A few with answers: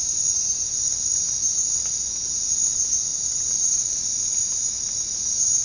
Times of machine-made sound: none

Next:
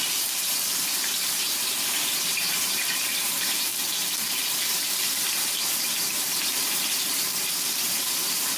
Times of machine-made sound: 0.0-3.7 (vocoder, BigVGAN v2); 4.5-7.3; 7.8-8.6

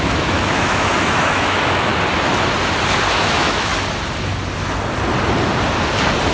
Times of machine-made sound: 0.0-1.9 (autoencoder, DAC-VAE); 3.1-3.7

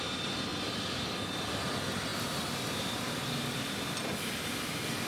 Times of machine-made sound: none

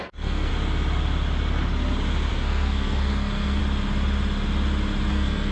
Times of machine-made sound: 0.0-0.5 (codec, SNAC); 2.3-3.6; 5.1-5.5